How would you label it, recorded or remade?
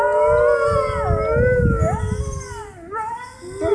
recorded